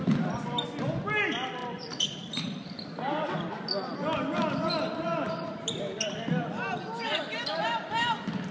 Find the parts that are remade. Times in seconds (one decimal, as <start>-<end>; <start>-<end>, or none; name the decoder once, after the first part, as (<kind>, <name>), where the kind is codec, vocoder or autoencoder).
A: none

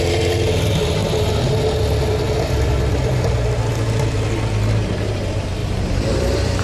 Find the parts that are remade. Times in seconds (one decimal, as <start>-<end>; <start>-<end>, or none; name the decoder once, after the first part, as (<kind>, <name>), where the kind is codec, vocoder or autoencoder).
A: 5.6-6.6 (vocoder, BigVGAN v2)

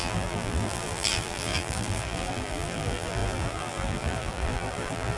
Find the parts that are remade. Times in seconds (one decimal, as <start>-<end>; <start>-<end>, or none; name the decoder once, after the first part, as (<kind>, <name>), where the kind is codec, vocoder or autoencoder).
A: 0.0-5.2 (vocoder, BigVGAN v2)